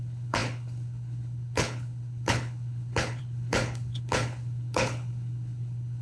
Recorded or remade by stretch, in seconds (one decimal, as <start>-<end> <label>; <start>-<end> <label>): 0.0-6.0 remade